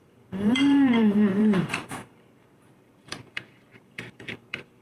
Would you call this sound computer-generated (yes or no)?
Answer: yes